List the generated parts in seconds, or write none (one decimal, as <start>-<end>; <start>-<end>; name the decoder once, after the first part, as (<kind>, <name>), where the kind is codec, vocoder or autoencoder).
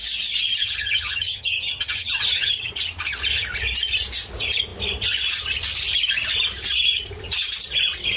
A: 0.6-2.7 (vocoder, HiFi-GAN)